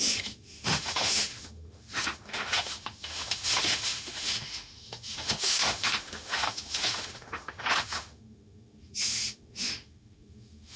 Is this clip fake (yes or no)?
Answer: yes